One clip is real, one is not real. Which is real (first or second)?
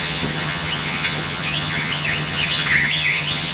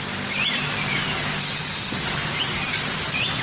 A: second